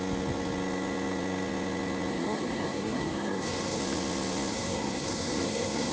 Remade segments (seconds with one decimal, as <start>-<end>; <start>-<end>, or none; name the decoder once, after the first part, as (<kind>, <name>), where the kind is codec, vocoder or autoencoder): 2.1-3.8 (codec, SNAC); 4.5-5.9